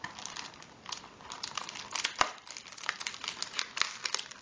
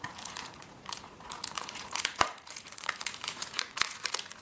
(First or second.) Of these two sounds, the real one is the first